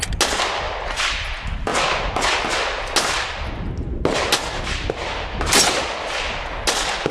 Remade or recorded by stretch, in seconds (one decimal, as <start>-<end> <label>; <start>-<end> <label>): 0.0-7.1 recorded